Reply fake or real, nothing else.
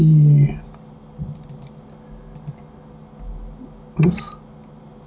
real